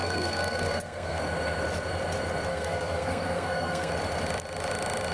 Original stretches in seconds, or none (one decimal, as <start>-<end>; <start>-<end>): 1.2-2.5; 3.9-5.1